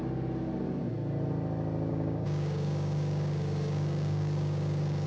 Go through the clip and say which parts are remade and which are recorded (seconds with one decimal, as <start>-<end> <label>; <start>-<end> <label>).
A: 0.0-1.9 recorded; 1.9-5.1 remade